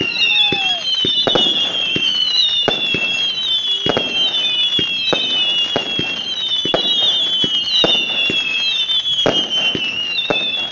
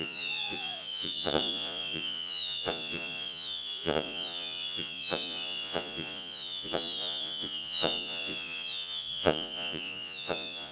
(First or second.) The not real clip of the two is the second